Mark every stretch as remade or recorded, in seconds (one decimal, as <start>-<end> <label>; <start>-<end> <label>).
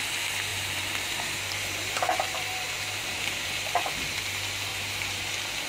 0.0-0.5 recorded; 0.5-3.9 remade; 3.9-4.7 recorded; 4.7-5.3 remade; 5.3-5.7 recorded